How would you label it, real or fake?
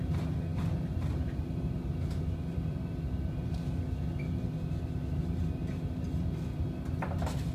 real